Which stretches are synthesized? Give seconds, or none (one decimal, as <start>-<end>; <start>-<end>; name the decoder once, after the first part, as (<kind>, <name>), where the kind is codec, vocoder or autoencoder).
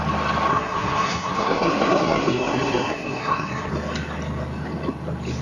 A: 0.5-3.7 (codec, SNAC)